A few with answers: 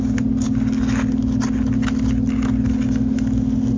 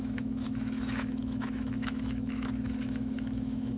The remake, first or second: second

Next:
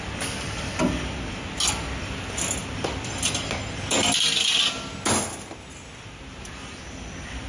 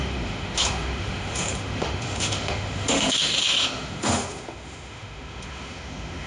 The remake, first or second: second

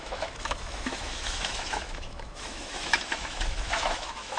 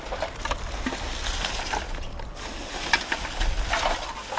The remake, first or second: first